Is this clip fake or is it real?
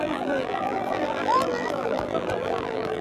fake